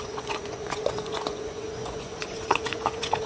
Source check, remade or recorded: remade